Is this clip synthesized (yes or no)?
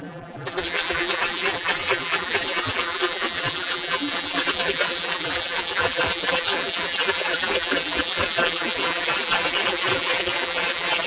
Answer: yes